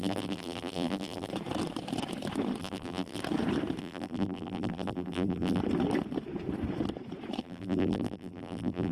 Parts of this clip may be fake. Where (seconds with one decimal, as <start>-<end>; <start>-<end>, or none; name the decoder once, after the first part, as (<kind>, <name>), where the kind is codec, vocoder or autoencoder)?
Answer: 0.0-1.3 (vocoder, BigVGAN v2); 2.6-3.2; 3.8-5.6; 7.4-8.9